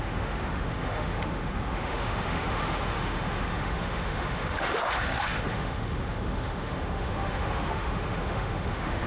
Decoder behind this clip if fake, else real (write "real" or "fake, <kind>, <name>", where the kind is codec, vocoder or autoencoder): fake, autoencoder, DAC-VAE